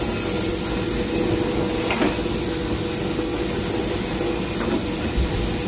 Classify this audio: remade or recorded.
recorded